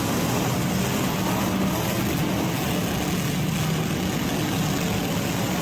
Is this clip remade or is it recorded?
recorded